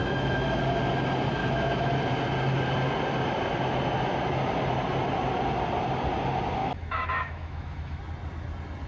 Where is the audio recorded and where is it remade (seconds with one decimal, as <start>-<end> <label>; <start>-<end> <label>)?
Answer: 0.0-0.6 remade; 0.6-1.4 recorded; 1.4-2.0 remade; 2.0-6.6 recorded; 6.6-8.0 remade; 8.0-8.9 recorded